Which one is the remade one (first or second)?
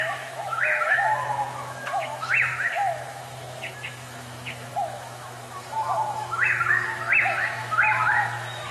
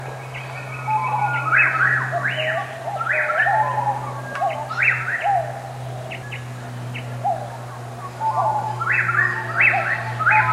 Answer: first